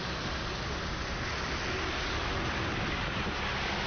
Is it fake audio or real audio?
real